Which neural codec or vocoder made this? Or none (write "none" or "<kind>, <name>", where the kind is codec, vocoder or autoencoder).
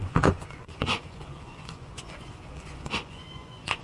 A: vocoder, Vocos